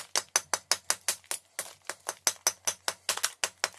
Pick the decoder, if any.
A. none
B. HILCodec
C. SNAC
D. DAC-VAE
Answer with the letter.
A